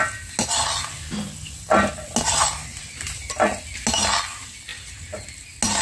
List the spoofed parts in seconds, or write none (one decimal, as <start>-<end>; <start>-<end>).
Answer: none